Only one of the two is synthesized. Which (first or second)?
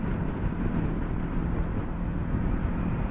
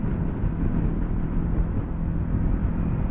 first